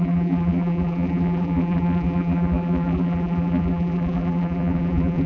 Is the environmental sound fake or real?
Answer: fake